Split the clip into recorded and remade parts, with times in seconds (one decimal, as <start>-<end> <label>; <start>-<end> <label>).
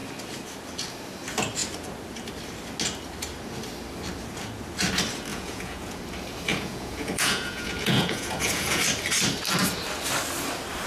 0.0-5.3 recorded; 5.3-6.0 remade; 6.0-6.5 recorded; 6.5-8.8 remade; 8.8-10.9 recorded